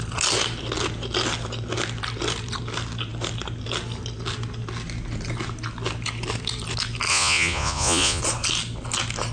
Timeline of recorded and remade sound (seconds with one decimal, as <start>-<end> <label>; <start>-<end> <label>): 0.0-7.1 recorded; 7.1-8.2 remade; 8.2-9.3 recorded